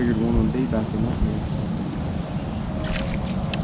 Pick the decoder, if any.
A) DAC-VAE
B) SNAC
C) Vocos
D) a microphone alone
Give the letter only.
D